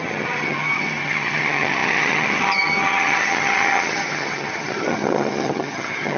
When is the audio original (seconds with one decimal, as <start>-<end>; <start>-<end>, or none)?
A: none